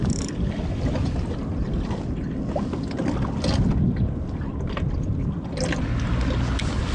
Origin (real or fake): real